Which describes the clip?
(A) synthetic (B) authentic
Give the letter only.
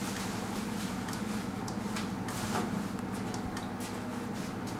B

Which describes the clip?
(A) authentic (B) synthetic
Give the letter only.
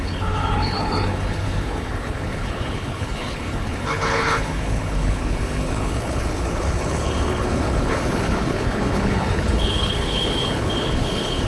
B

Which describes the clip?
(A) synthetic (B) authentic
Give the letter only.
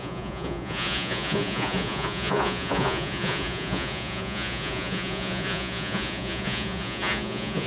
A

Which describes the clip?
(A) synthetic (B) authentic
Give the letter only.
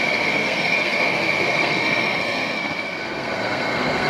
A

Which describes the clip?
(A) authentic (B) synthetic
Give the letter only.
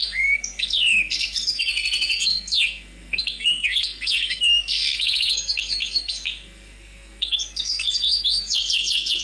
B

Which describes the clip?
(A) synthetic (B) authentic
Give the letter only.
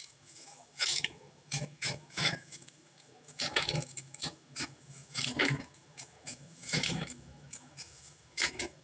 A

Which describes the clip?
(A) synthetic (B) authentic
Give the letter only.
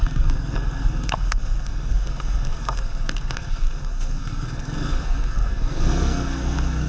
A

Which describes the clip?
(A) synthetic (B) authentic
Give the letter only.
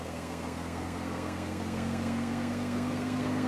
A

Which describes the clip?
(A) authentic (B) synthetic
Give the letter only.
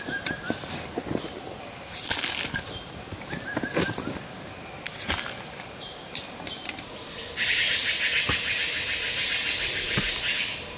A